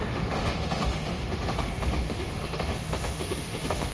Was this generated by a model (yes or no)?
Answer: yes